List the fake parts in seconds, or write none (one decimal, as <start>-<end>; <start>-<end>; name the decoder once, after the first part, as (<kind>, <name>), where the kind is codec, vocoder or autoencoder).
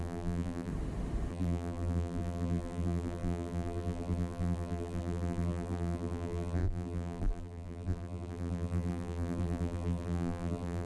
0.0-0.7 (vocoder, BigVGAN v2); 1.3-10.9